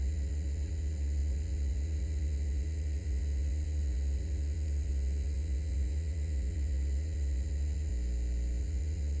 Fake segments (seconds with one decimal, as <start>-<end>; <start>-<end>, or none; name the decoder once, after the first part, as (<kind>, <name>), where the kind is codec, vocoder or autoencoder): 0.0-7.9 (vocoder, Vocos); 8.6-9.2